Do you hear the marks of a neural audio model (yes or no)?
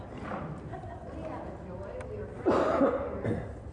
no